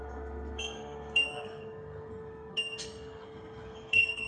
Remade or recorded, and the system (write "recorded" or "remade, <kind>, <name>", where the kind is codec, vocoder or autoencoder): remade, codec, SNAC